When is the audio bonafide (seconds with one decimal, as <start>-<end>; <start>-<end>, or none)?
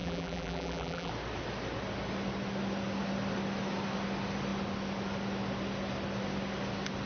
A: 1.1-7.1